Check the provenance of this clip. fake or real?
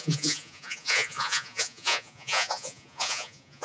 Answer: fake